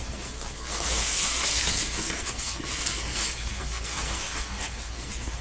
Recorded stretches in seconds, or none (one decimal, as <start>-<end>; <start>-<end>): none